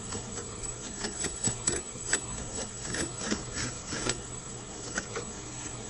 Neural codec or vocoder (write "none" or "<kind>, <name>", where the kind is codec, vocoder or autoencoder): codec, SNAC